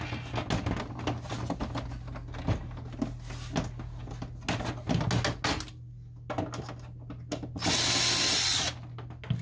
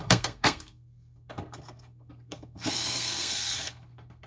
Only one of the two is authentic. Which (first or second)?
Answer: first